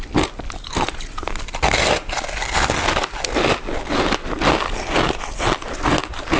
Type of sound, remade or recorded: recorded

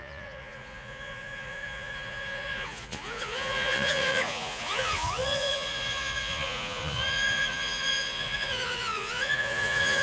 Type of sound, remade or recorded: remade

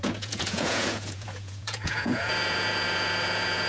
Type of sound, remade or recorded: remade